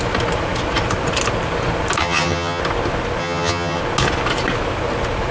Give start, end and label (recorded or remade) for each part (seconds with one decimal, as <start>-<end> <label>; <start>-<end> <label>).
0.0-2.0 recorded; 2.0-2.6 remade; 2.6-3.2 recorded; 3.2-3.8 remade; 3.8-5.3 recorded